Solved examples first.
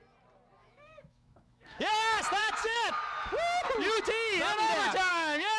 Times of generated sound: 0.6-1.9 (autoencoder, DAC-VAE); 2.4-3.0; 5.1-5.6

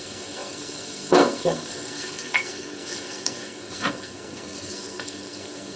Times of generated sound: 0.0-5.8 (codec, SNAC)

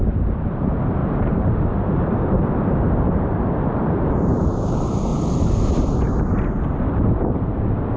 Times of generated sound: 0.0-5.1 (vocoder, BigVGAN v2); 6.9-8.0

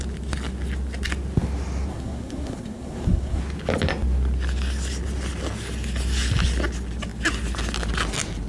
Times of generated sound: 1.9-3.4 (codec, SNAC)